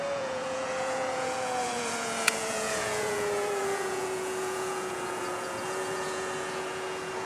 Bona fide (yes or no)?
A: no